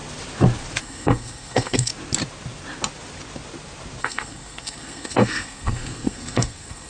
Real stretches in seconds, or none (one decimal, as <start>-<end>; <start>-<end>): 0.0-0.8; 1.9-4.0